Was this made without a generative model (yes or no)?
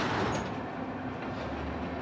yes